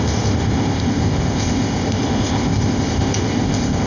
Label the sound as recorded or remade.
remade